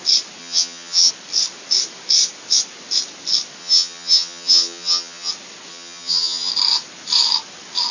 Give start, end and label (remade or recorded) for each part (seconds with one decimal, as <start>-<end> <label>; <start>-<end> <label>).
0.0-0.4 recorded; 0.4-1.1 remade; 1.1-3.6 recorded; 3.6-5.3 remade; 5.3-5.7 recorded; 5.7-6.5 remade; 6.5-7.9 recorded